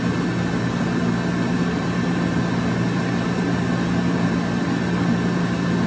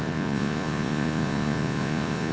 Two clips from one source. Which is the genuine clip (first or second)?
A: first